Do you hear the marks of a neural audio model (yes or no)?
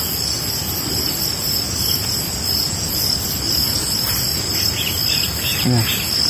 no